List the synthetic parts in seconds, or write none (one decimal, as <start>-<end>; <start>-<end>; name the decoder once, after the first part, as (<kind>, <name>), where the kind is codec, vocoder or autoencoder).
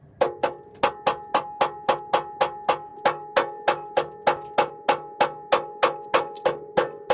none